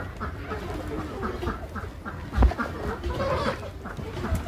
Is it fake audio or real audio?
real